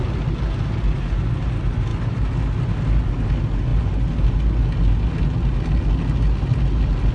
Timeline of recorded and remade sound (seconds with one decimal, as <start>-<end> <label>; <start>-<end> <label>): 0.0-7.1 recorded